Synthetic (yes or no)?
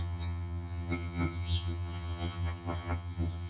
yes